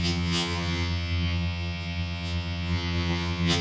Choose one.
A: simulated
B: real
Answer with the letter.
A